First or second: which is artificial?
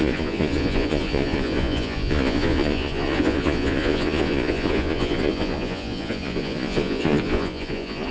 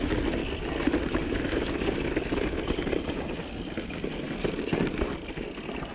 first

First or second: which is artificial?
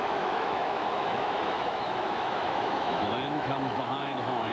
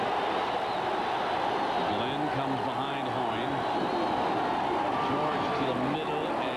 first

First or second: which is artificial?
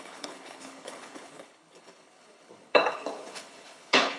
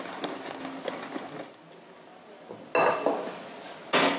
first